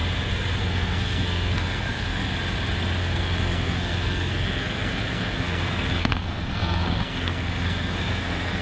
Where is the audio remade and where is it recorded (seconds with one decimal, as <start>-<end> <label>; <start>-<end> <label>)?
0.0-0.6 recorded; 0.6-2.3 remade; 2.3-3.0 recorded; 3.0-8.6 remade